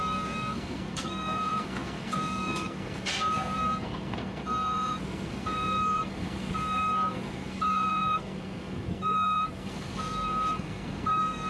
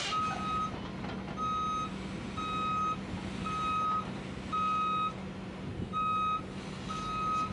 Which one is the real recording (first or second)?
second